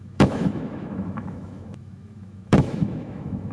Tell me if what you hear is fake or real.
fake